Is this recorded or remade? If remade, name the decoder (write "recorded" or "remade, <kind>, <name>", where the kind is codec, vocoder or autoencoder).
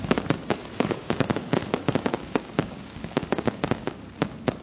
remade, codec, DAC